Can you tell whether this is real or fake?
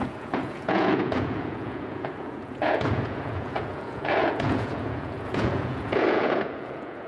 fake